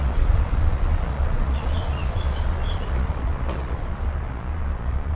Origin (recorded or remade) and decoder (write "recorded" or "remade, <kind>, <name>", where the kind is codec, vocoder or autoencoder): remade, vocoder, Vocos